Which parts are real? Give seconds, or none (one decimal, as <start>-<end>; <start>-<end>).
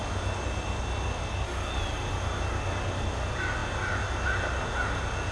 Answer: 0.0-5.3